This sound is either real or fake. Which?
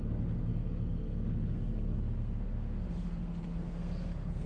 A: fake